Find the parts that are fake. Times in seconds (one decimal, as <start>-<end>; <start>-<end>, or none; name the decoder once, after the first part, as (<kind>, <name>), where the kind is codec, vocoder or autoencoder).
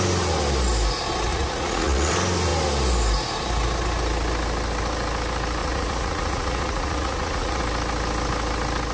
1.3-2.1 (vocoder, Vocos); 5.6-7.6